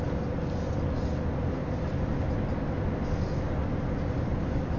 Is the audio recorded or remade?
recorded